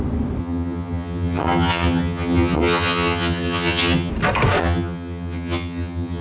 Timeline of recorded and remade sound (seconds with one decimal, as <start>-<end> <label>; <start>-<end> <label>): 0.0-0.4 recorded; 0.4-4.1 remade; 4.1-4.6 recorded; 4.6-6.2 remade